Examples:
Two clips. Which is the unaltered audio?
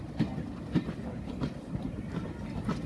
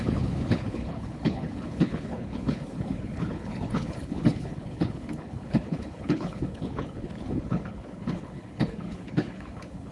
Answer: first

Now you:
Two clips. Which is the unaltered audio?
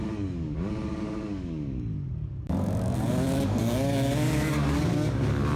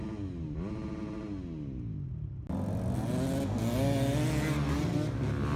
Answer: second